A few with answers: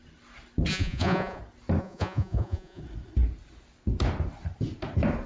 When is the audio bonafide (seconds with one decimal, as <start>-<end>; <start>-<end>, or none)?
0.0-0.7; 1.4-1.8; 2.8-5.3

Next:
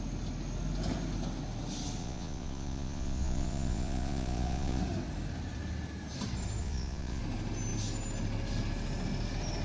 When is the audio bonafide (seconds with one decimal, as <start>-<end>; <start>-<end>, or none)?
0.0-2.0; 4.8-6.6; 7.2-9.6

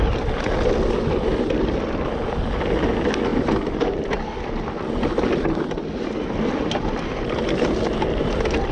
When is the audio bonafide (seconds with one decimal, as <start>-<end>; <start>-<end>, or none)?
0.0-8.7

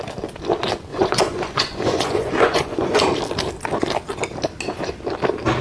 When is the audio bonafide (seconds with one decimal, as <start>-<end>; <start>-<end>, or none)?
0.0-0.9; 3.0-5.6

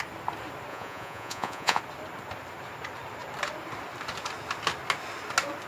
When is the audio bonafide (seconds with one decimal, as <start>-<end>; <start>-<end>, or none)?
0.0-0.7; 1.8-5.7